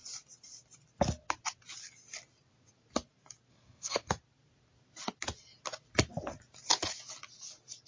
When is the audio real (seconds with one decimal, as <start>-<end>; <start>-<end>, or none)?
0.0-3.5; 4.1-7.9